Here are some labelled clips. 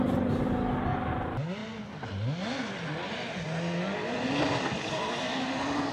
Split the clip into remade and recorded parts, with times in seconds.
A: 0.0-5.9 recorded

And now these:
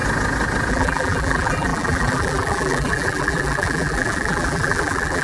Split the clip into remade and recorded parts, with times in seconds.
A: 0.0-0.7 recorded; 0.7-5.2 remade